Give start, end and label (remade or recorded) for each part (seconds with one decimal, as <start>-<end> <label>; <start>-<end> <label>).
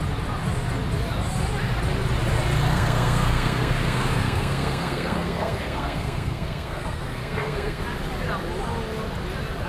0.0-2.7 recorded; 2.7-7.8 remade; 7.8-9.7 recorded